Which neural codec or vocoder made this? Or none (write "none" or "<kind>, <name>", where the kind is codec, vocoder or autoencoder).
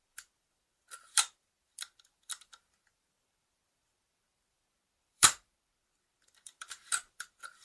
vocoder, BigVGAN v2